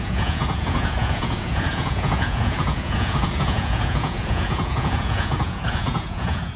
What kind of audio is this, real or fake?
fake